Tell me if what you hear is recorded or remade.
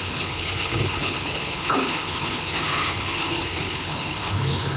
remade